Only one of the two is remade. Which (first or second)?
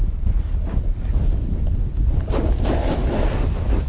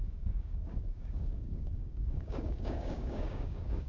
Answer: second